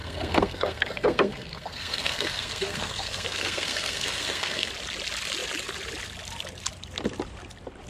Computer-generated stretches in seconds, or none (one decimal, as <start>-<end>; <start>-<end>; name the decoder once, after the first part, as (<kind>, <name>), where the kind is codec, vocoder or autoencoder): 0.0-4.7 (codec, SNAC)